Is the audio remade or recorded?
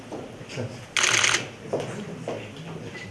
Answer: recorded